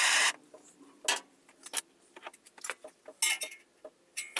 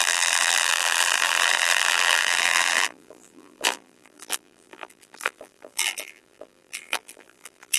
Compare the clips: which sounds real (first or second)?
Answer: first